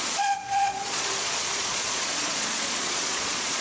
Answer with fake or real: fake